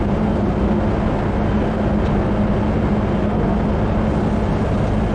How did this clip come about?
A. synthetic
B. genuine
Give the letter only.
B